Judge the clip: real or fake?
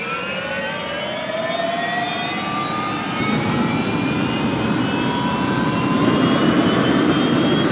fake